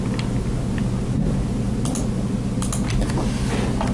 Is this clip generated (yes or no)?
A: no